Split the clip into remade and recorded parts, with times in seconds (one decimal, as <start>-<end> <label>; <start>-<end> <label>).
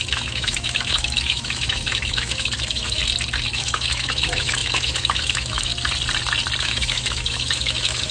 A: 0.0-3.0 remade; 3.0-3.5 recorded; 3.5-5.7 remade; 5.7-6.6 recorded; 6.6-8.1 remade